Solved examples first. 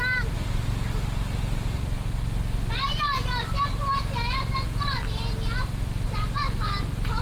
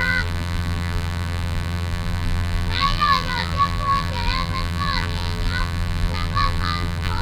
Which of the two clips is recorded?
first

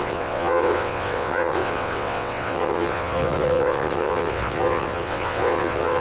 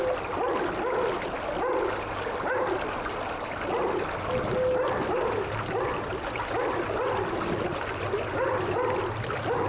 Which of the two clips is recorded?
second